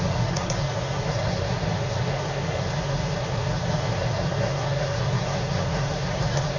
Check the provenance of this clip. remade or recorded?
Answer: remade